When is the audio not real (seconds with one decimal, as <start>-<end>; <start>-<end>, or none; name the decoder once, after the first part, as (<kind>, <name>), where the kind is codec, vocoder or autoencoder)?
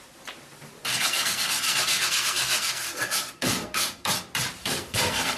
0.9-4.1 (codec, SNAC); 4.6-5.4